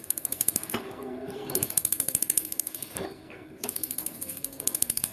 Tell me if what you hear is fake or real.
fake